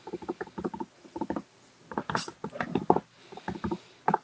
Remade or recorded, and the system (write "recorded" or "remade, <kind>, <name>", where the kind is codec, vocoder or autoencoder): recorded